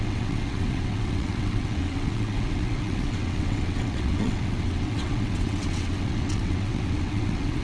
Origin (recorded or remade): remade